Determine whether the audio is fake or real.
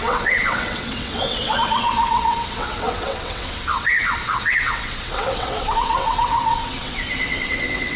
fake